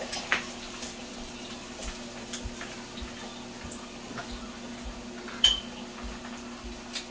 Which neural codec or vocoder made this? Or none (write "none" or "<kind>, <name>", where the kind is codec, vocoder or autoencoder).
none